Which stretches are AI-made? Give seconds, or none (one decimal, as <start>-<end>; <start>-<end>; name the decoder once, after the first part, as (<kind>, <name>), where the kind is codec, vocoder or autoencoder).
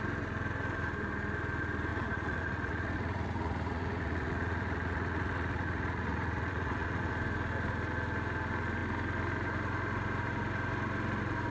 1.9-7.1 (vocoder, Vocos)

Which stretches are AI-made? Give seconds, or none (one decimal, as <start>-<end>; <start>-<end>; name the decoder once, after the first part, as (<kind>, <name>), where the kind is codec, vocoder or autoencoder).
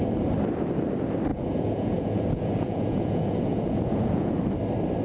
1.3-4.3 (vocoder, Vocos)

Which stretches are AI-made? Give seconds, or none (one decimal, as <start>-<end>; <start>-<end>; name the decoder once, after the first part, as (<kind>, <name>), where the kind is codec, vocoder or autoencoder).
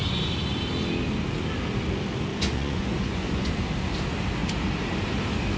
2.3-3.5 (vocoder, Vocos)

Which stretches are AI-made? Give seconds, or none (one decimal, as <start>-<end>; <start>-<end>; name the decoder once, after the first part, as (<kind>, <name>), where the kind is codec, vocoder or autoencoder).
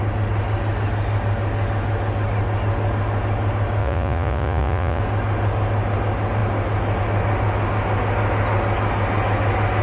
3.8-5.0 (vocoder, Vocos)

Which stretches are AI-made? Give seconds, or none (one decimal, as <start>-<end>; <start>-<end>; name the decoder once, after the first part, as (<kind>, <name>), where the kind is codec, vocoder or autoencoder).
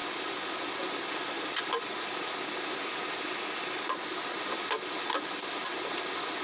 none